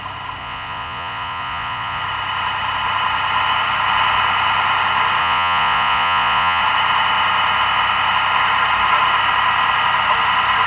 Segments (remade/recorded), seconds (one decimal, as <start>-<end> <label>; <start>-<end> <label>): 0.0-0.4 recorded; 0.4-2.0 remade; 2.0-5.2 recorded; 5.2-6.6 remade; 6.6-10.7 recorded